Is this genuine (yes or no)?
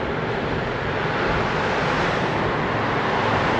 yes